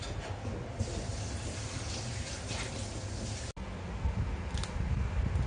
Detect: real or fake real